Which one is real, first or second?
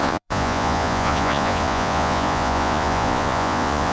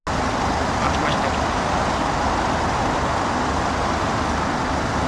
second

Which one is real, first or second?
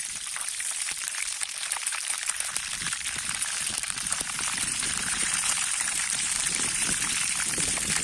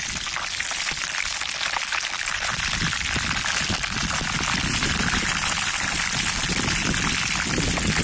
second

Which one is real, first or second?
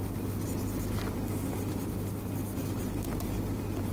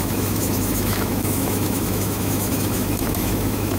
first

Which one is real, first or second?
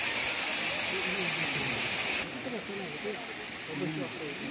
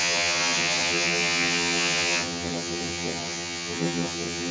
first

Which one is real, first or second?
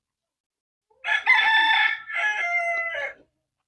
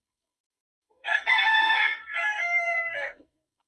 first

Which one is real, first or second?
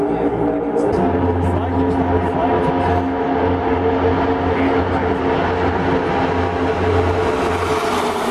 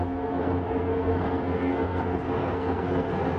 first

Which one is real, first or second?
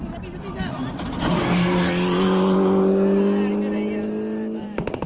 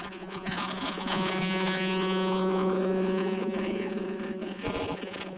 first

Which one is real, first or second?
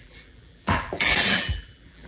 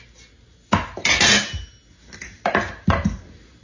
second